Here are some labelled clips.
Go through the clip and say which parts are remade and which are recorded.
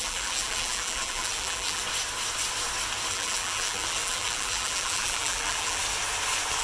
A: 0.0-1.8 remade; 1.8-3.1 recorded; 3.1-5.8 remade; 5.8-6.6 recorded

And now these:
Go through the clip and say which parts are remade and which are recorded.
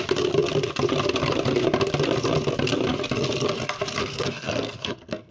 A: 0.0-4.0 recorded; 4.0-5.3 remade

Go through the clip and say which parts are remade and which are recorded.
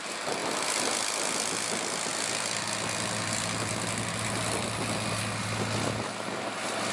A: 0.0-6.9 recorded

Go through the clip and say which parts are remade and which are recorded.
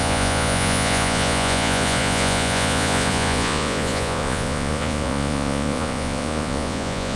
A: 0.0-7.2 remade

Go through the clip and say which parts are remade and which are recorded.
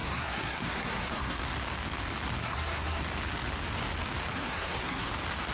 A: 0.0-1.4 remade; 1.4-2.4 recorded; 2.4-3.0 remade; 3.0-4.3 recorded; 4.3-5.1 remade; 5.1-5.5 recorded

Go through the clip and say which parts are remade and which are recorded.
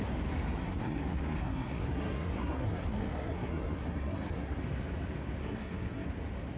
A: 0.0-0.6 recorded; 0.6-4.6 remade; 4.6-5.4 recorded; 5.4-6.1 remade; 6.1-6.6 recorded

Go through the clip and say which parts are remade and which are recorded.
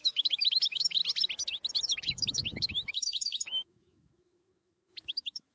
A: 0.0-1.0 remade; 1.0-1.8 recorded; 1.8-5.5 remade